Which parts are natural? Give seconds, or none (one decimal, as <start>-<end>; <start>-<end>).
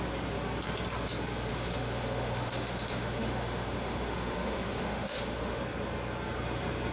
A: 0.0-1.5; 5.6-6.9